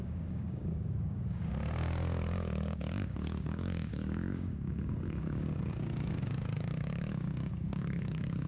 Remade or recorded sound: remade